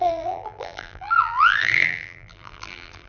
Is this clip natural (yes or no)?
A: no